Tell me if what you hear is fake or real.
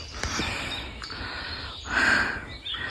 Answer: real